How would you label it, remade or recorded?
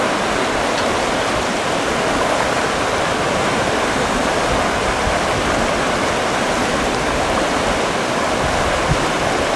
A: recorded